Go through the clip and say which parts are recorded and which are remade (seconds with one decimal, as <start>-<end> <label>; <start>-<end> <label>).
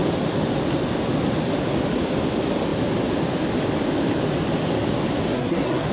0.0-5.3 recorded; 5.3-5.9 remade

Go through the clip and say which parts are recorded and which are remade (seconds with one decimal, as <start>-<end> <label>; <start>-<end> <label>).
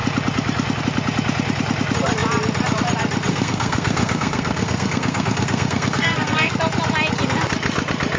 0.0-3.3 recorded; 3.3-6.5 remade; 6.5-8.2 recorded